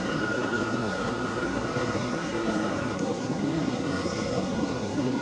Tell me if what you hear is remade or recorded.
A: remade